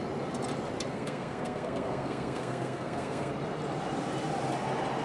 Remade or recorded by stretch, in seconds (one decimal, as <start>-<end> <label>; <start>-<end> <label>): 0.0-0.9 recorded; 0.9-3.3 remade; 3.3-5.0 recorded